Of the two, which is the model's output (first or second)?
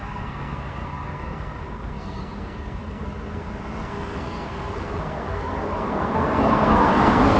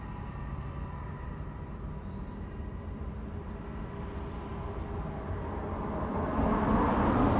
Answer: first